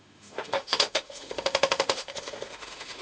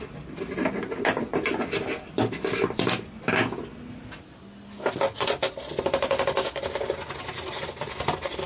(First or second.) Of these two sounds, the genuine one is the second